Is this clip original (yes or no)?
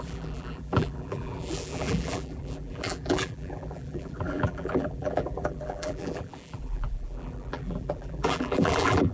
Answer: no